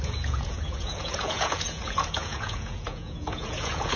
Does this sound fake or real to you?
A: fake